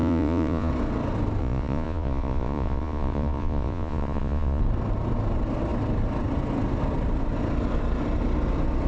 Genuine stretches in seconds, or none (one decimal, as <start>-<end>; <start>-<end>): 0.7-1.4; 4.6-8.9